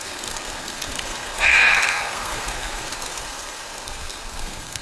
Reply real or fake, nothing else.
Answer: fake